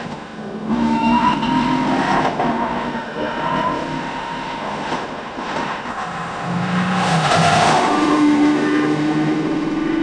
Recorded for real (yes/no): no